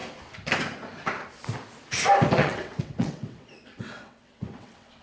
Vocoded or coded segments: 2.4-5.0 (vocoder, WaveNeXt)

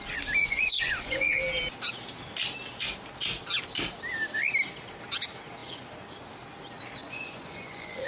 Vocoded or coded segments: 0.4-1.4 (vocoder, Vocos); 7.0-8.1